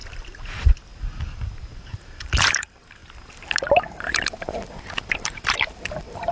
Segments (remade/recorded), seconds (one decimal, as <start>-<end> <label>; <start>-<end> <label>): 0.0-1.6 recorded; 1.6-3.0 remade; 3.0-4.1 recorded; 4.1-6.3 remade